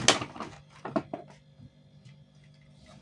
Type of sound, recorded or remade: recorded